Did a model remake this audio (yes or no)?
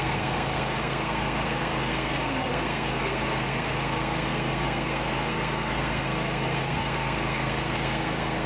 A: yes